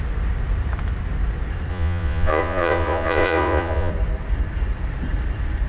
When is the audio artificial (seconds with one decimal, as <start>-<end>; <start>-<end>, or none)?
1.7-3.9